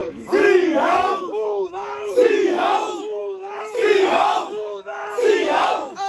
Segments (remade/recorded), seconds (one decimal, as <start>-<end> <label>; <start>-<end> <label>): 0.0-6.1 remade